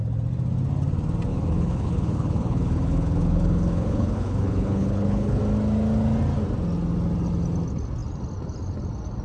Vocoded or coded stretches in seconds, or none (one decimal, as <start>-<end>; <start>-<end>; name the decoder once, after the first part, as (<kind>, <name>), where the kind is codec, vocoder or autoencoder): 1.3-5.4 (codec, HILCodec)

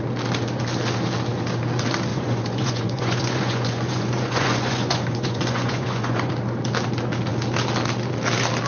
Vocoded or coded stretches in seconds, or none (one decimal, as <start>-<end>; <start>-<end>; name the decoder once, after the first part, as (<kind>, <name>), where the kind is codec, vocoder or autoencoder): 2.1-6.3 (vocoder, Vocos)

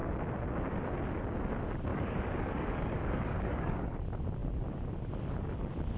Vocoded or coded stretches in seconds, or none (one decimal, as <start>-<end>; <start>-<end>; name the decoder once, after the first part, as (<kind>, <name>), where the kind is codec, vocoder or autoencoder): 1.9-4.0 (codec, DAC)

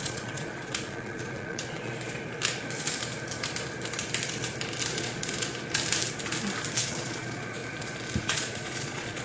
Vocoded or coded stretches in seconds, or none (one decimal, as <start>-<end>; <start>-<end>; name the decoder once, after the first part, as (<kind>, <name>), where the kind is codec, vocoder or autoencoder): 0.0-1.9 (vocoder, Vocos); 4.9-5.5; 6.8-7.6; 8.2-9.2

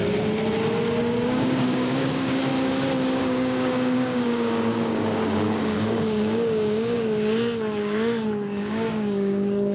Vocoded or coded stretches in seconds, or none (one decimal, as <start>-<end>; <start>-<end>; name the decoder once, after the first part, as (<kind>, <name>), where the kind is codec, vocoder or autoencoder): 1.0-2.5 (codec, DAC); 3.2-9.7